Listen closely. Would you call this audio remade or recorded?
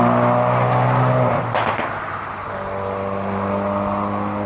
recorded